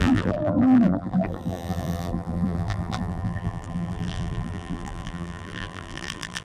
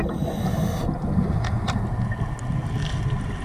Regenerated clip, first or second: first